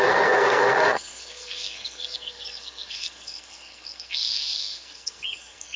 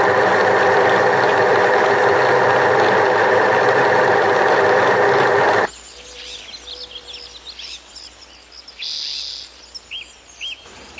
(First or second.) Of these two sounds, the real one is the second